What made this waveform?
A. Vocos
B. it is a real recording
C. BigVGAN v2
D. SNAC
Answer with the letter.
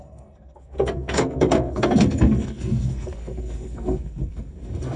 D